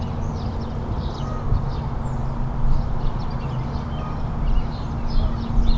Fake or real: real